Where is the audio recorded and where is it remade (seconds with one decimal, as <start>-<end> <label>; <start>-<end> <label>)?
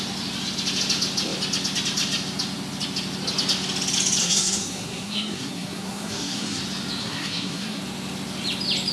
0.0-4.2 recorded; 4.2-6.6 remade; 6.6-7.0 recorded; 7.0-7.8 remade; 7.8-8.9 recorded